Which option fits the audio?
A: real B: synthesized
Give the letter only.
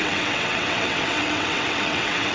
B